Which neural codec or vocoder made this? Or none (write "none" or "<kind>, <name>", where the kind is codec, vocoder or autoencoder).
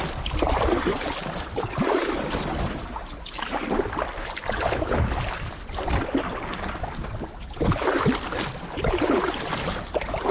none